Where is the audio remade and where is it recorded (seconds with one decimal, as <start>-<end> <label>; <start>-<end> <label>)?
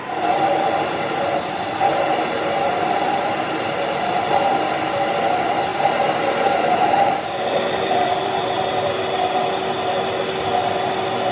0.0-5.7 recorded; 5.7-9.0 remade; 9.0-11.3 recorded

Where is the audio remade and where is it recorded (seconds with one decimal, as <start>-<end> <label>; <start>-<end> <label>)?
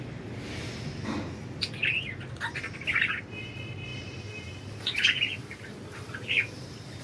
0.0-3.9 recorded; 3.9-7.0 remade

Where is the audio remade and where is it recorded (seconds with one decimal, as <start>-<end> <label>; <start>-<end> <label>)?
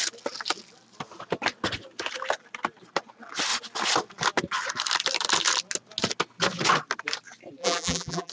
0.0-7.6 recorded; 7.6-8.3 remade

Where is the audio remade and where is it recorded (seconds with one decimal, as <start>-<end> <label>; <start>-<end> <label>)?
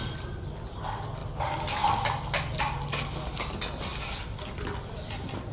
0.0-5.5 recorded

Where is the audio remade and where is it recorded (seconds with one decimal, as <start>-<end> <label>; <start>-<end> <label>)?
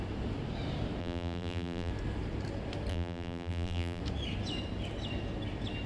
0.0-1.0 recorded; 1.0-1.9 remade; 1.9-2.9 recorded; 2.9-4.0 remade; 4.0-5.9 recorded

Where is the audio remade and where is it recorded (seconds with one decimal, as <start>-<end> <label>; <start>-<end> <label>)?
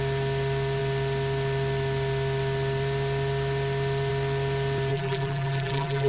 0.0-4.9 recorded; 4.9-6.1 remade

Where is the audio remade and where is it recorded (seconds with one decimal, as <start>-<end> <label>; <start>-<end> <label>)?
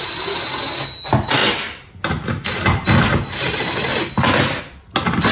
0.0-5.3 recorded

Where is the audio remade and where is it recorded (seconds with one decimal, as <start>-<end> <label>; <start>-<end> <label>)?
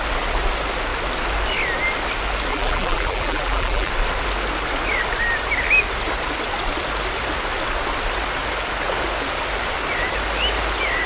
0.0-2.5 recorded; 2.5-3.9 remade; 3.9-11.1 recorded